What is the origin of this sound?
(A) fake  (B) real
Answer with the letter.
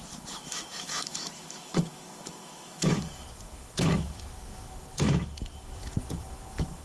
A